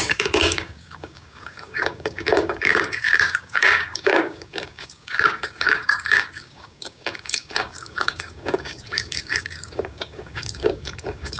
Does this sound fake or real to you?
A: fake